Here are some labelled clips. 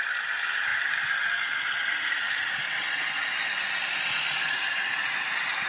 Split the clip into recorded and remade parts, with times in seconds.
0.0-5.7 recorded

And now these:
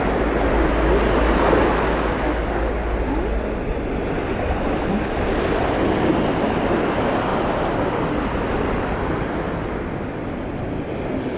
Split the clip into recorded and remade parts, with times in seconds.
0.0-11.4 recorded

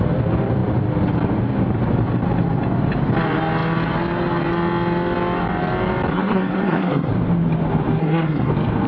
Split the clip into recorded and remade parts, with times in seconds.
0.0-6.1 recorded; 6.1-7.1 remade; 7.1-8.0 recorded; 8.0-8.5 remade; 8.5-8.9 recorded